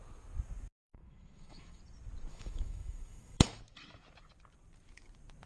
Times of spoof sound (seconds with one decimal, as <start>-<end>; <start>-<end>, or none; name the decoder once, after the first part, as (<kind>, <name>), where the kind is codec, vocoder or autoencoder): 0.8-1.8 (autoencoder, DAC-VAE); 2.3-3.6